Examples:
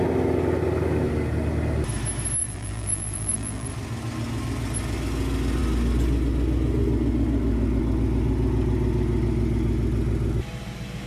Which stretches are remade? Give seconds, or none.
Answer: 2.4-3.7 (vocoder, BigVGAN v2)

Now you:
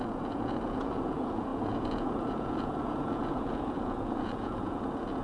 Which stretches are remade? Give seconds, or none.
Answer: 0.0-5.2 (vocoder, Vocos)